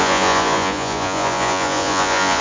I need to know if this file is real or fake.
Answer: fake